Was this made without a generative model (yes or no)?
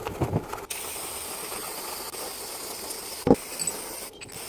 yes